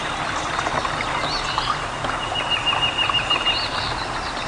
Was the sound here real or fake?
real